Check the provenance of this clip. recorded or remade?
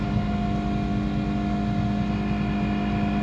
recorded